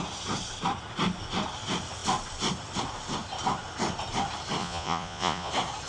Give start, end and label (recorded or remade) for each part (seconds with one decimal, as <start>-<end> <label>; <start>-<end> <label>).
0.0-4.6 recorded; 4.6-5.5 remade; 5.5-5.9 recorded

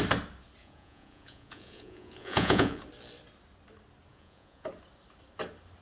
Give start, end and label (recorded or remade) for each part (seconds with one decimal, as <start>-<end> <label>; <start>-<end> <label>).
0.0-0.6 recorded; 0.6-2.8 remade; 2.8-4.1 recorded; 4.1-4.7 remade; 4.7-5.8 recorded

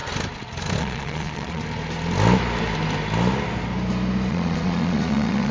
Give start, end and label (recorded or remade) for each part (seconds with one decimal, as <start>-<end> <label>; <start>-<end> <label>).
0.0-0.8 recorded; 0.8-1.6 remade; 1.6-4.3 recorded; 4.3-5.5 remade

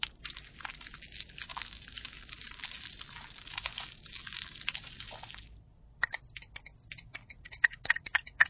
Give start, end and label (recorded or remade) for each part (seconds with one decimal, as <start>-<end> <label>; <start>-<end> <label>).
0.0-7.2 recorded; 7.2-8.5 remade

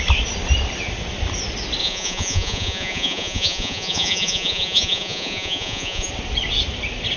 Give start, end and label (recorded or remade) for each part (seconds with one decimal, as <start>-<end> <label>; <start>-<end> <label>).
0.0-1.8 recorded; 1.8-6.1 remade; 6.1-7.2 recorded

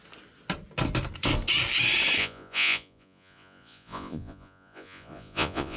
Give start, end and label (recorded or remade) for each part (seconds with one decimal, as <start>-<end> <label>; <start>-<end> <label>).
0.0-2.2 recorded; 2.2-5.8 remade

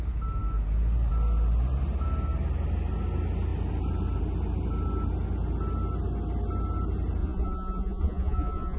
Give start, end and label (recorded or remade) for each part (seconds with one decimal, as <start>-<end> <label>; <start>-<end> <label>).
0.0-7.2 recorded; 7.2-8.8 remade